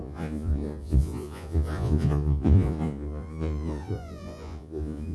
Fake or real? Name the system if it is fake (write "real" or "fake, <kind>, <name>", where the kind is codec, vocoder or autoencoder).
fake, vocoder, Vocos